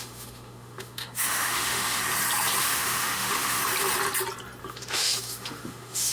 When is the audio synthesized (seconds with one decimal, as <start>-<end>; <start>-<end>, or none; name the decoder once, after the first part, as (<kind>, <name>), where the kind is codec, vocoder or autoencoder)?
0.0-2.0 (autoencoder, DAC-VAE); 2.6-3.6; 4.6-6.1

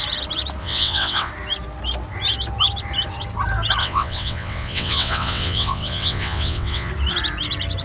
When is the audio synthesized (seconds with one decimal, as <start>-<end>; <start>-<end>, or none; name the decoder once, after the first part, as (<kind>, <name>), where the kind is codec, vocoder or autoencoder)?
0.6-1.3 (vocoder, WaveNeXt); 3.8-6.9

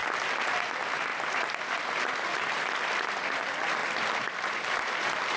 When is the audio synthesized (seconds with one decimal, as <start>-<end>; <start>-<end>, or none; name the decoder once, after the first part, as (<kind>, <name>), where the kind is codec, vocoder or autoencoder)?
none

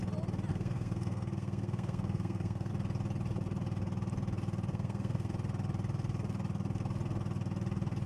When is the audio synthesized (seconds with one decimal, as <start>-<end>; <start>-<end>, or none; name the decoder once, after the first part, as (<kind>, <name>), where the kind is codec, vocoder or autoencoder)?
0.5-2.7 (codec, SNAC); 4.7-5.3

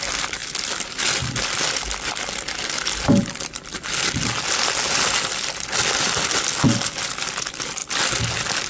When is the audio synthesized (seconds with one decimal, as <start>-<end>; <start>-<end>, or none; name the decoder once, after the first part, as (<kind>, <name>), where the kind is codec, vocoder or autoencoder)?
none

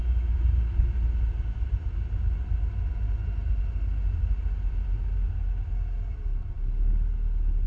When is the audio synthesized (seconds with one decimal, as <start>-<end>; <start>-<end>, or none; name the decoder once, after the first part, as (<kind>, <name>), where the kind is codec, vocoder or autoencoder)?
none

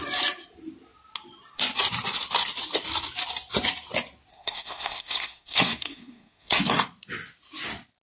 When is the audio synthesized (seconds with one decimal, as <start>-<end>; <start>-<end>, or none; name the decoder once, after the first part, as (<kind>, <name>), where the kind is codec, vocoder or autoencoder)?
4.3-6.6 (codec, SNAC)